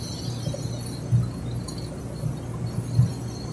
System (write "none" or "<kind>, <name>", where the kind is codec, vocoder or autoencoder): none